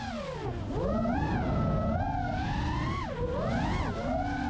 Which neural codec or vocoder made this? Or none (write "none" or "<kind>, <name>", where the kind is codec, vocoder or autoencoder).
none